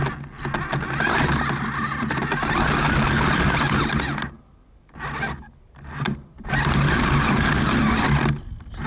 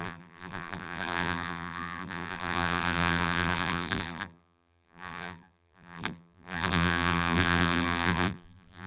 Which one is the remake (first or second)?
second